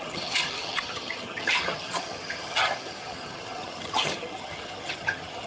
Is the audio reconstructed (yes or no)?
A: yes